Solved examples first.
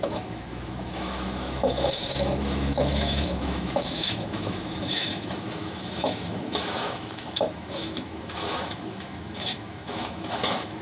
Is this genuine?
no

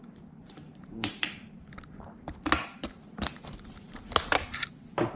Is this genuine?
no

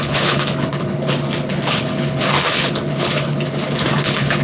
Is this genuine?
no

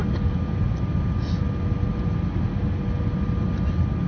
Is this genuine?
yes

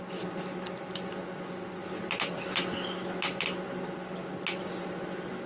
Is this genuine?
yes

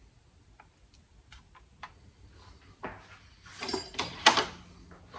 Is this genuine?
yes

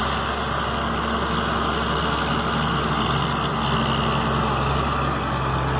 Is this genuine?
yes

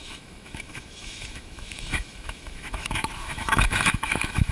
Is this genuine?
no